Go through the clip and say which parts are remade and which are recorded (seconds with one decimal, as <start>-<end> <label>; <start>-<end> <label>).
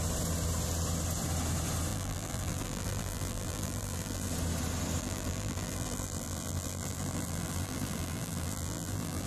0.0-1.9 recorded; 1.9-4.3 remade; 4.3-5.0 recorded; 5.0-9.3 remade